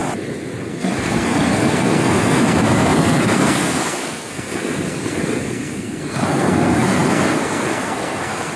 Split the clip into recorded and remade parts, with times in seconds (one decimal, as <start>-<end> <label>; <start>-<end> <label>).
0.0-0.6 recorded; 0.6-8.6 remade